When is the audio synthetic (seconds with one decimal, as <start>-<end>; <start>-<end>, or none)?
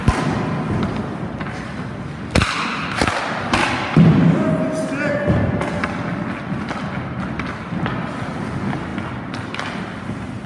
none